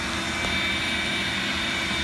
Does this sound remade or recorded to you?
recorded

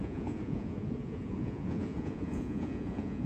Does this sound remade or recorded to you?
remade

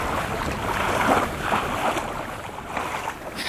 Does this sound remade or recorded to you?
recorded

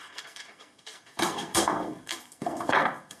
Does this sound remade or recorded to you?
remade